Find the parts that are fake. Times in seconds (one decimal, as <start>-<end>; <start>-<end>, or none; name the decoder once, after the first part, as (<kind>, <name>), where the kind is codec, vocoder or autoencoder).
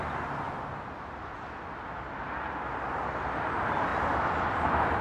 none